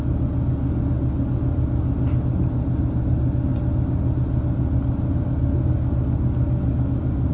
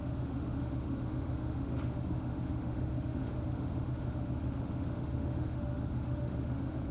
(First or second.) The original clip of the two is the first